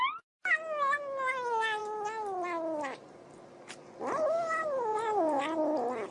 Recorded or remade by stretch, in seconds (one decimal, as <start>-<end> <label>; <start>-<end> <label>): 0.0-4.9 recorded; 4.9-5.4 remade; 5.4-6.1 recorded